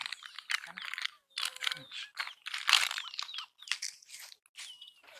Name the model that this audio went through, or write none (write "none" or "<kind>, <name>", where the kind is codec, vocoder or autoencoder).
none